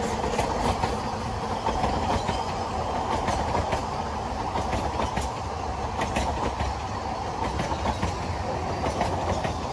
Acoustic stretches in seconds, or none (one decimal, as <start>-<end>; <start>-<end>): 0.0-2.1; 2.7-9.7